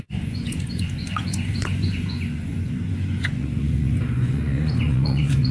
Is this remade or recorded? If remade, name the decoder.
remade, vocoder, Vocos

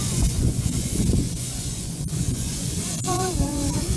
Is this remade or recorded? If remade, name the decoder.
remade, vocoder, Vocos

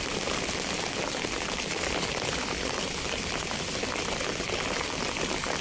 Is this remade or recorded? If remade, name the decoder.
recorded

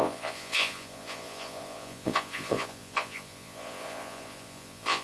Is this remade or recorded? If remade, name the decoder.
remade, vocoder, Vocos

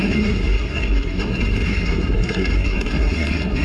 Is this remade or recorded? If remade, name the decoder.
remade, codec, SNAC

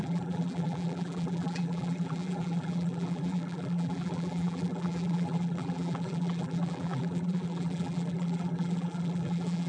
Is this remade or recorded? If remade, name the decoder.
remade, vocoder, BigVGAN v2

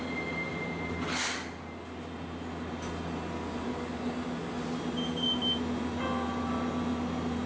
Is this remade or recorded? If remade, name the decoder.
recorded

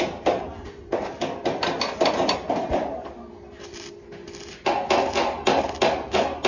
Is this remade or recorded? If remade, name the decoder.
recorded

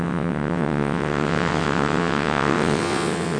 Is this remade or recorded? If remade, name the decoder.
remade, vocoder, WaveNeXt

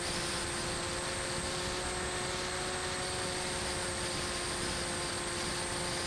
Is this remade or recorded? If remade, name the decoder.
recorded